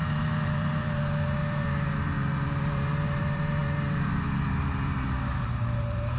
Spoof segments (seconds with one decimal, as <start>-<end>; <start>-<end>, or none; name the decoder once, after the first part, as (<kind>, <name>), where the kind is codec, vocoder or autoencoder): 0.0-6.2 (vocoder, BigVGAN v2)